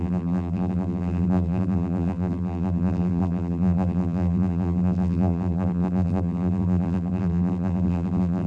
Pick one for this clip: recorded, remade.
remade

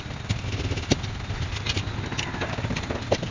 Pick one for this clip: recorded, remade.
recorded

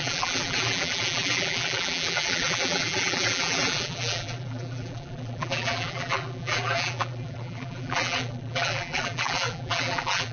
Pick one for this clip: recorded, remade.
remade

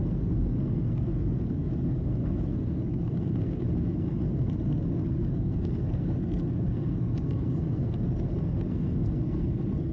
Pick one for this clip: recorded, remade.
remade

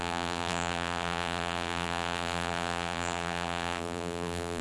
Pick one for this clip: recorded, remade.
remade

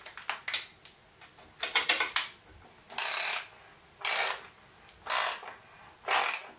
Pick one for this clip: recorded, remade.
recorded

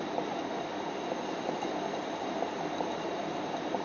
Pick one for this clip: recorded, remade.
recorded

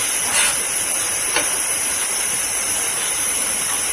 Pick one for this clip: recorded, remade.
recorded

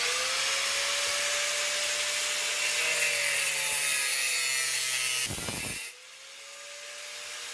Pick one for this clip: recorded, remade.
recorded